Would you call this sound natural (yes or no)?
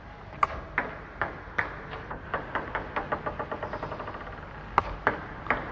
yes